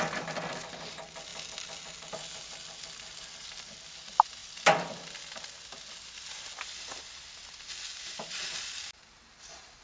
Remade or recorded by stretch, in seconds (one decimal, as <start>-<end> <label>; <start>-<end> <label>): 0.0-9.8 recorded